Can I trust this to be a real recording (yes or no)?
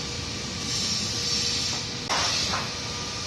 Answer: yes